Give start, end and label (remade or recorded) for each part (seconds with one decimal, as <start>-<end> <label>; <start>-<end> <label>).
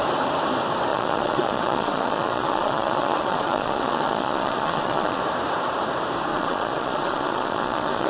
0.0-0.9 recorded; 0.9-5.2 remade; 5.2-6.3 recorded; 6.3-8.1 remade